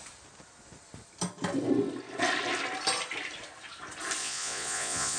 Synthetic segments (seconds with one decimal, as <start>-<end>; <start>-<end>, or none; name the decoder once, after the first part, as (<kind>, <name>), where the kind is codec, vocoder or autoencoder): 4.2-5.2 (vocoder, Vocos)